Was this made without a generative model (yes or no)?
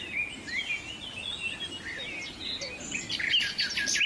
yes